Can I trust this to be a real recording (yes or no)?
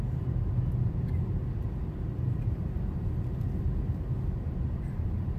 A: yes